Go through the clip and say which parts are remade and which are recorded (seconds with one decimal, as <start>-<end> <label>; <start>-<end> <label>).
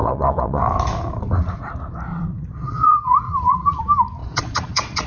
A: 0.0-0.6 remade; 0.6-2.1 recorded; 2.1-3.8 remade; 3.8-4.2 recorded; 4.2-5.1 remade